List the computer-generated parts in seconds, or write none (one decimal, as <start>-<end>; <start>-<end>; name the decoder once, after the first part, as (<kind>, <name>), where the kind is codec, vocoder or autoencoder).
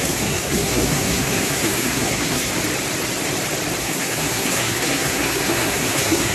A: 0.0-2.5 (codec, SNAC); 3.8-6.3